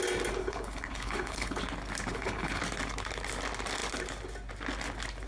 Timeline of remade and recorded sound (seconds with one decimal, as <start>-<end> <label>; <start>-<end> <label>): 0.0-0.4 recorded; 0.4-1.6 remade; 1.6-2.1 recorded; 2.1-2.6 remade; 2.6-5.3 recorded